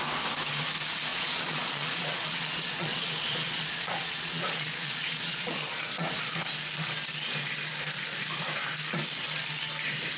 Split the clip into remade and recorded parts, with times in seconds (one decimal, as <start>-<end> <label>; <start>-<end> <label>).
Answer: 0.0-1.1 recorded; 1.1-6.2 remade; 6.2-10.2 recorded